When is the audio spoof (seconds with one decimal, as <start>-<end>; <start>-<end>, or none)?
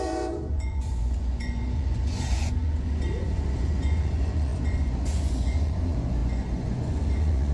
0.0-7.5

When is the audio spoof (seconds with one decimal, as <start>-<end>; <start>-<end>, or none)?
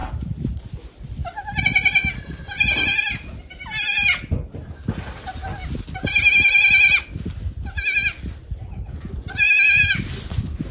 none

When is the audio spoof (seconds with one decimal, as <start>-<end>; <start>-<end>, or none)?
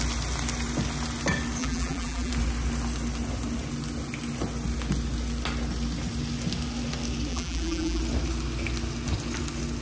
1.6-2.3; 7.3-8.0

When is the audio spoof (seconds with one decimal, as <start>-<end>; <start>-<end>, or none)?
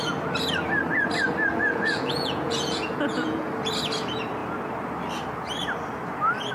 1.5-3.5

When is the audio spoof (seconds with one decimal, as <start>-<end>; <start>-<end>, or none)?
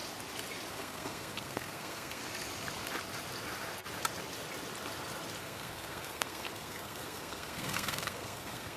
0.7-2.2; 5.4-8.8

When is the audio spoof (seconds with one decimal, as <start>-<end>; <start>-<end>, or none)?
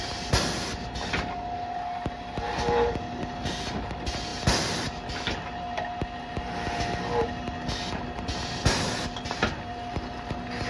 none